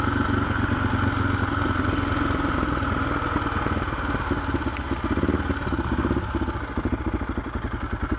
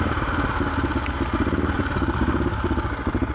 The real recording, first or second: first